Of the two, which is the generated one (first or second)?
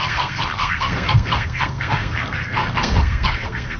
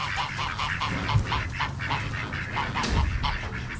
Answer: first